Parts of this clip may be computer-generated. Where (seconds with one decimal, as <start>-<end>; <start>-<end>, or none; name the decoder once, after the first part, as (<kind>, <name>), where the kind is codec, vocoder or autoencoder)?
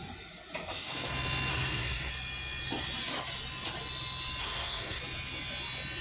1.5-2.1 (codec, SNAC); 4.4-5.0